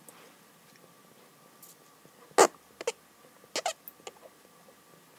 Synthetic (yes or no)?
no